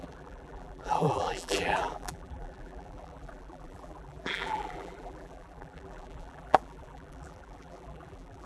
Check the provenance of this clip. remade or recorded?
remade